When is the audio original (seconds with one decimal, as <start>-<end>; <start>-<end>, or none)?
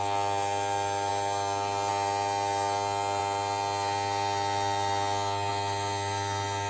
0.0-6.7